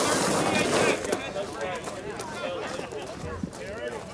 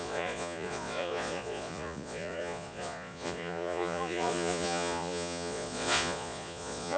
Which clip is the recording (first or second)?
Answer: first